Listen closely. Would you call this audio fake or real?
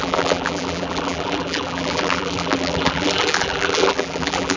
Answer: fake